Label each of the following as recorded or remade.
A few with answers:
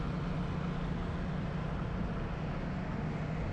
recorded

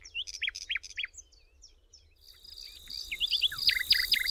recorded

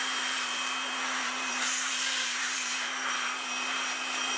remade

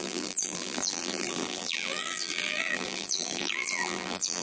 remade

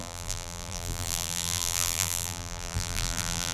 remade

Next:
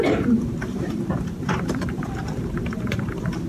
remade